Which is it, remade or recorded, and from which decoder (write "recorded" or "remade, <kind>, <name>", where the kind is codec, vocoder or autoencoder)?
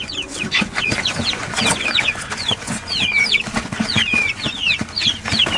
remade, vocoder, Vocos